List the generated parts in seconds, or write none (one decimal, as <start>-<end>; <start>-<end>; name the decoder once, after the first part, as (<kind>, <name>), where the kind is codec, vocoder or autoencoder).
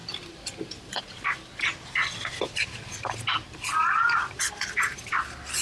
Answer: none